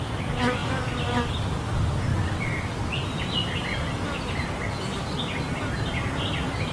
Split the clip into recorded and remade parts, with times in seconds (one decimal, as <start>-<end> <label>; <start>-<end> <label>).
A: 0.0-6.7 recorded